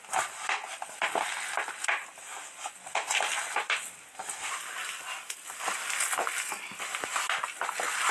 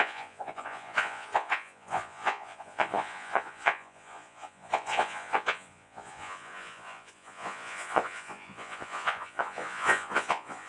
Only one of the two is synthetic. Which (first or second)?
second